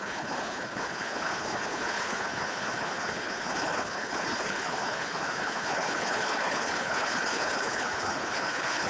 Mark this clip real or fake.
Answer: fake